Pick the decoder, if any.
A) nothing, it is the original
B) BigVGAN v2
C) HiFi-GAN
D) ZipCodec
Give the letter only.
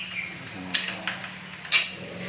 A